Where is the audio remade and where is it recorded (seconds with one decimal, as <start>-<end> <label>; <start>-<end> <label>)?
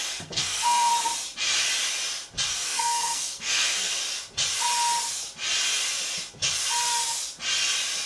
0.0-0.9 remade; 0.9-2.5 recorded; 2.5-4.0 remade; 4.0-8.1 recorded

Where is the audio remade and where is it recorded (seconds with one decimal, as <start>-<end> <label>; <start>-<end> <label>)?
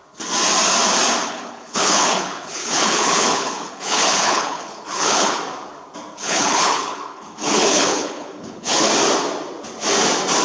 0.0-1.2 recorded; 1.2-5.4 remade; 5.4-6.1 recorded; 6.1-8.9 remade; 8.9-10.4 recorded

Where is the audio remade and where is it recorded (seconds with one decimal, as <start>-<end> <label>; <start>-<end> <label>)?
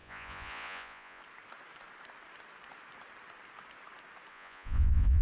0.0-1.2 remade; 1.2-4.3 recorded; 4.3-5.2 remade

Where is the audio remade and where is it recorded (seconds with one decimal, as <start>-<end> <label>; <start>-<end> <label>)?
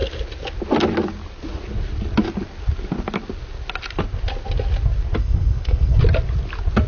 0.0-5.2 recorded; 5.2-6.0 remade; 6.0-6.9 recorded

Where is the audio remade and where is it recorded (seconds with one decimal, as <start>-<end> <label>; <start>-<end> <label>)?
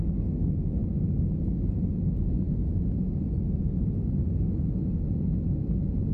0.0-6.1 recorded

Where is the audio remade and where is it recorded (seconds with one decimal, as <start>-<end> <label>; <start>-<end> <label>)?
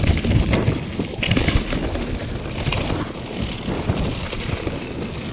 0.0-5.3 recorded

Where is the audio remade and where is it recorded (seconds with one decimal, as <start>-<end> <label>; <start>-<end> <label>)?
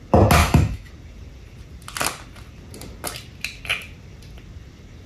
0.0-0.4 recorded; 0.4-0.9 remade; 0.9-5.1 recorded